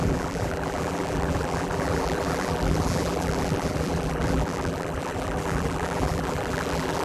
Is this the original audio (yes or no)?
no